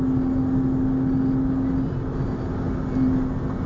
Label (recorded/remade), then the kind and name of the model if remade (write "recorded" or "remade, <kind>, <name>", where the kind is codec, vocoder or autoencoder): recorded